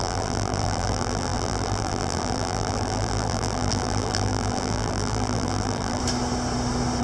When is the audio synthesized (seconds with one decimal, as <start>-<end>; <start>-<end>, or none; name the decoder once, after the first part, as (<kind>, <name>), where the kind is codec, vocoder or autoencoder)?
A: 0.0-6.0 (vocoder, BigVGAN v2)